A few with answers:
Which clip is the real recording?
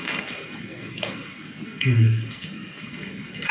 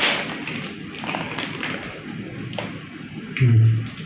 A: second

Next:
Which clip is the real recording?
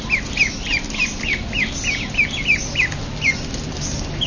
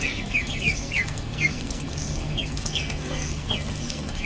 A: first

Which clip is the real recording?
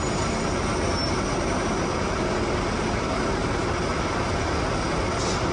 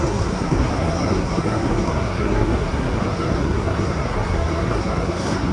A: first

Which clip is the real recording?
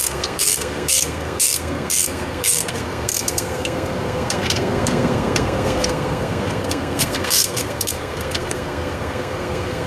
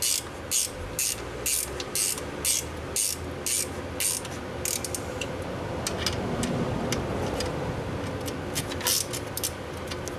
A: second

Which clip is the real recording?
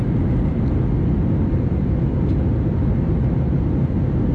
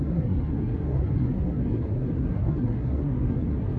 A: first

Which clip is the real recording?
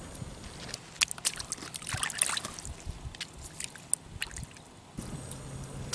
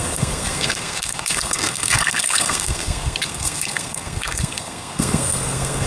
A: first